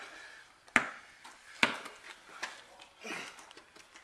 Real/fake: real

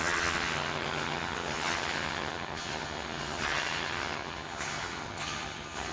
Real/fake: fake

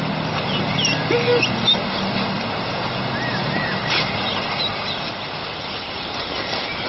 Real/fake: real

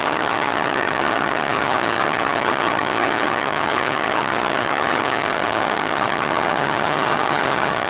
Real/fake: fake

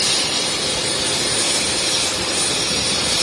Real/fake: real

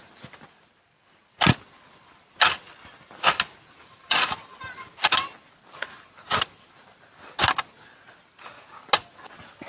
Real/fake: real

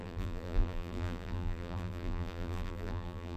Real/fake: fake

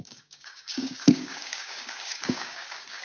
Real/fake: fake